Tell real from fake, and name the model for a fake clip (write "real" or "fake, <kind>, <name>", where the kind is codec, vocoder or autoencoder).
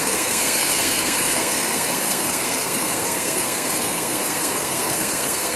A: fake, codec, SNAC